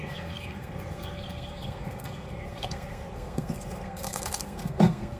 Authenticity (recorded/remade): remade